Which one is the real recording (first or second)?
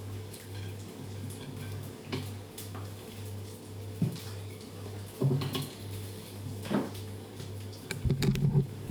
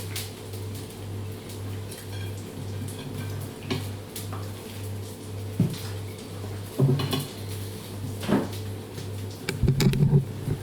second